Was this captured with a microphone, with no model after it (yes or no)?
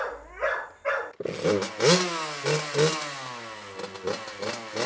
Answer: yes